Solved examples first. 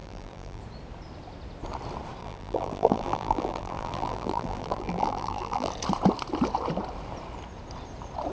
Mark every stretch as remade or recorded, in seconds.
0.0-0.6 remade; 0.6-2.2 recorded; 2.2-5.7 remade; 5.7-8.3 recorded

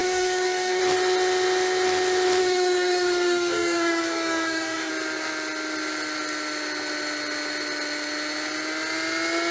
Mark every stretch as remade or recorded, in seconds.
0.0-0.8 remade; 0.8-2.4 recorded; 2.4-4.9 remade; 4.9-9.5 recorded

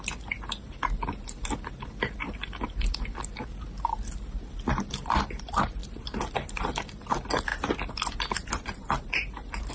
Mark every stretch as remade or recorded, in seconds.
0.0-9.7 recorded

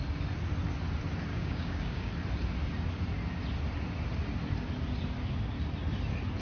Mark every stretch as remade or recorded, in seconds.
0.0-1.3 recorded; 1.3-2.1 remade; 2.1-6.4 recorded

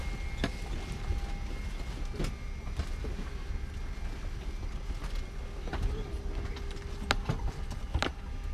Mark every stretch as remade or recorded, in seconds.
0.0-8.5 recorded

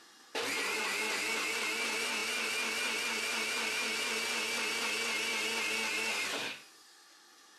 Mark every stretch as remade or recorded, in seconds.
0.0-7.6 recorded